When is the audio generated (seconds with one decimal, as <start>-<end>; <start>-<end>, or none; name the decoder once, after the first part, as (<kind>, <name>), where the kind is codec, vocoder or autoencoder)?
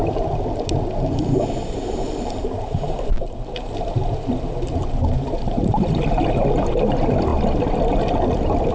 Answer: 1.6-6.4 (vocoder, BigVGAN v2)